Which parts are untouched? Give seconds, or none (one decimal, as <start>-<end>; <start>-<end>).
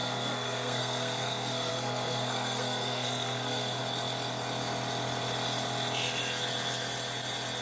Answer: 3.8-7.6